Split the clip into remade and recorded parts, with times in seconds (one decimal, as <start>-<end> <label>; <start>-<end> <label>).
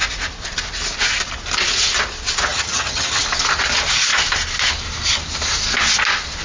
0.0-2.5 recorded; 2.5-3.2 remade; 3.2-6.4 recorded